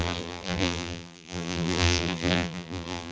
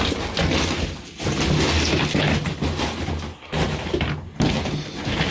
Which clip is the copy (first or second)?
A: first